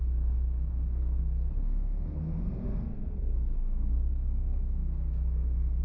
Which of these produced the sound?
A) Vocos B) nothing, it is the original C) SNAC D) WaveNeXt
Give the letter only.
C